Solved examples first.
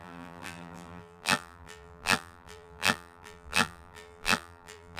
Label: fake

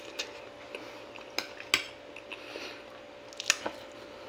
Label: real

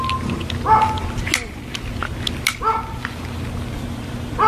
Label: real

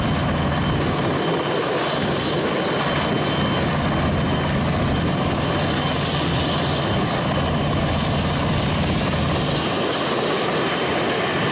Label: real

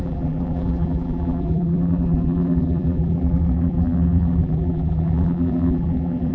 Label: fake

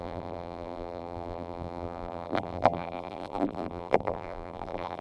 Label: fake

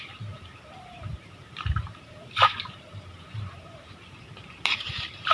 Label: fake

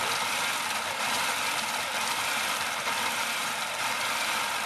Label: fake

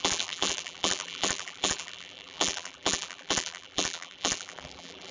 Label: fake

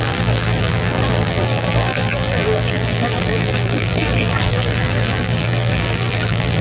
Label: fake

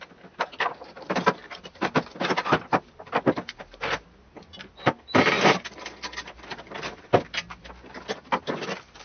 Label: real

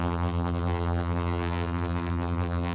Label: fake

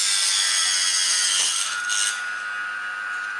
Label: real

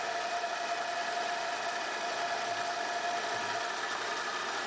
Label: real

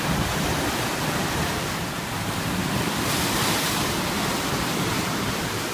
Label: fake